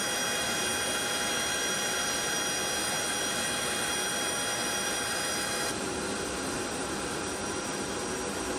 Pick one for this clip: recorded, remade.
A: recorded